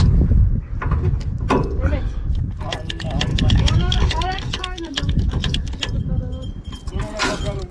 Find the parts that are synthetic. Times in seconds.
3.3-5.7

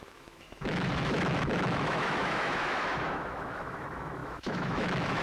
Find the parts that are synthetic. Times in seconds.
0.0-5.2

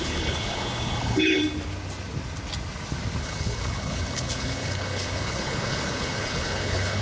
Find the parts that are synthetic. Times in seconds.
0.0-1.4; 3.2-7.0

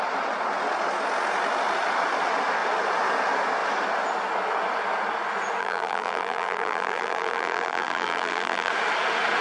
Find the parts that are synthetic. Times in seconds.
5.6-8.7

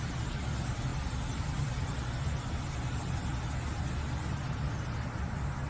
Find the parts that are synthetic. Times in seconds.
none

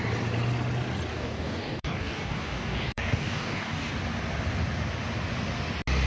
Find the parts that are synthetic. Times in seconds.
1.1-3.9

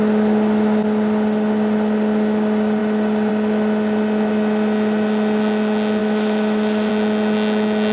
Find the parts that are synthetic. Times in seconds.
6.0-6.9

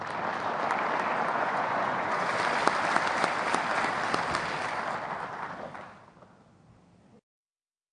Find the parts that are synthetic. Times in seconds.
1.3-2.3